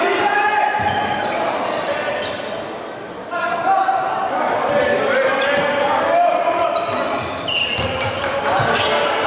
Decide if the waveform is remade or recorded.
recorded